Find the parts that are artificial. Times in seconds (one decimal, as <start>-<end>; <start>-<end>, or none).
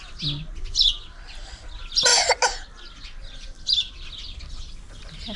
none